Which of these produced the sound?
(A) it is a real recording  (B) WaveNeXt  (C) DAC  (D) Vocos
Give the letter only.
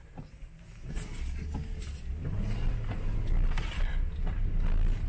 A